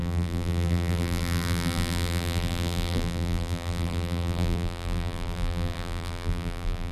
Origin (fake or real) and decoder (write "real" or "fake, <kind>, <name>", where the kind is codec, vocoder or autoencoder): fake, vocoder, BigVGAN v2